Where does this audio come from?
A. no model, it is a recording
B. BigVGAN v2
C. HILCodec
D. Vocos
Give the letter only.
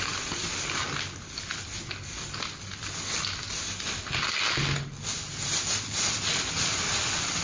A